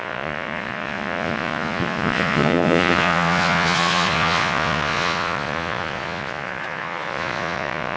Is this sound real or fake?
fake